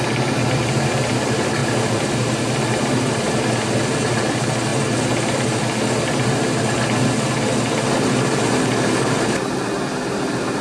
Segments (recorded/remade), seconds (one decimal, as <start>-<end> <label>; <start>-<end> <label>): 0.0-1.6 recorded; 1.6-2.4 remade; 2.4-10.6 recorded